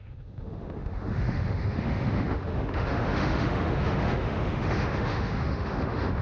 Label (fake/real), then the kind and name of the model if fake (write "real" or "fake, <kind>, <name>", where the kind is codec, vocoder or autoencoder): fake, autoencoder, DAC-VAE